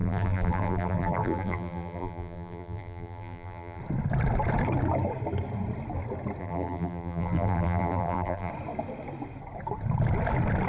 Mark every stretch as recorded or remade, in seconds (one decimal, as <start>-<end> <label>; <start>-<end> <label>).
0.0-3.8 remade; 3.8-6.4 recorded; 6.4-8.5 remade; 8.5-10.7 recorded